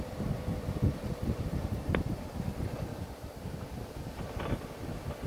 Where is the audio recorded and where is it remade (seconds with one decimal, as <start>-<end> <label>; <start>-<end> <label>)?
0.0-1.0 recorded; 1.0-2.1 remade; 2.1-2.9 recorded; 2.9-3.9 remade; 3.9-5.3 recorded